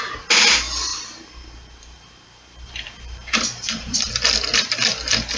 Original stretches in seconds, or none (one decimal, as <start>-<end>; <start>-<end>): 0.0-0.9; 4.1-5.4